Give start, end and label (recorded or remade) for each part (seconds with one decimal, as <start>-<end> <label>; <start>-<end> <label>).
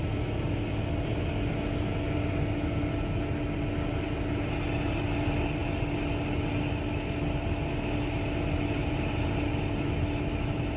0.0-10.8 recorded